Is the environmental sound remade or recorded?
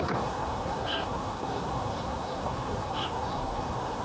remade